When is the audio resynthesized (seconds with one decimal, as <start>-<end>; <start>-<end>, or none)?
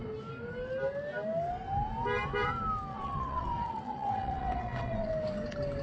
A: 2.9-5.1